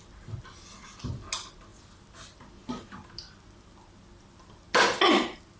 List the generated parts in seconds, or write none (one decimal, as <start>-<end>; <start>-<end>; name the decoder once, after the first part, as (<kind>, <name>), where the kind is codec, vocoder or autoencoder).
none